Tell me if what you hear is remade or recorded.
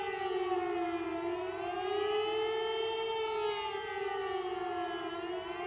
recorded